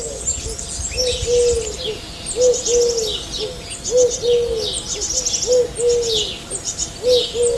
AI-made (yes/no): no